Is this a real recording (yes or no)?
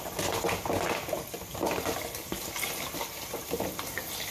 yes